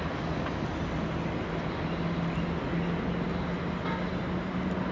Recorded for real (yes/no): yes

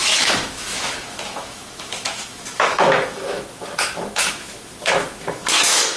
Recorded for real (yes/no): no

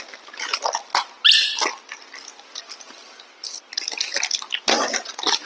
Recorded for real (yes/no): yes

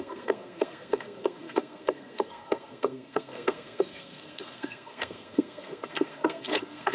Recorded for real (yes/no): no